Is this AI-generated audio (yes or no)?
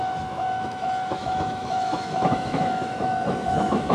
yes